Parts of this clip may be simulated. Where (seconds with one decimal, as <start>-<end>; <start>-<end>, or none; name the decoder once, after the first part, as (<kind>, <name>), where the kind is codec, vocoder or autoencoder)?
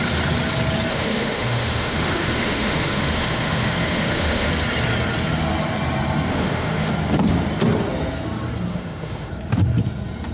0.9-4.5 (autoencoder, DAC-VAE); 6.3-6.9; 8.7-9.3